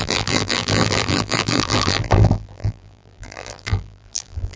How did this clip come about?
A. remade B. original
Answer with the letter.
A